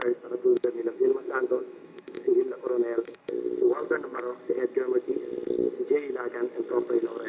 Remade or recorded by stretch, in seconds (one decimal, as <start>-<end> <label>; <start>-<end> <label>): 0.0-0.5 recorded; 0.5-3.3 remade; 3.3-7.3 recorded